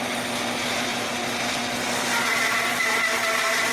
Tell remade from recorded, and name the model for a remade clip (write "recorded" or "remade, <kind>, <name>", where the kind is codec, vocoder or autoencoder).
recorded